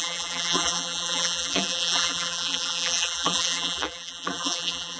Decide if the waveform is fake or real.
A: fake